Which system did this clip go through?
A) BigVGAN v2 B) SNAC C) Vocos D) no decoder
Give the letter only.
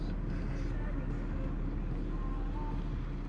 D